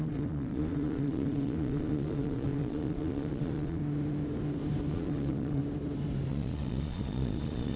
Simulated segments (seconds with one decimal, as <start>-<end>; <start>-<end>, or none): 0.0-3.8; 4.9-5.6; 6.3-7.8